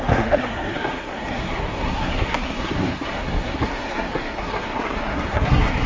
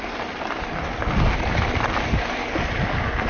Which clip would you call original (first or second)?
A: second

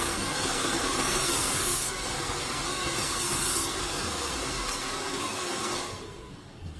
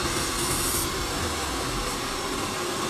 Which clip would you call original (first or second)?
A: second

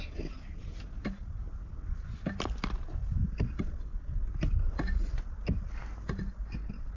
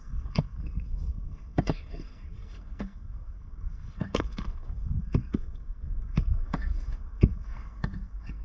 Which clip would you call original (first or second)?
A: first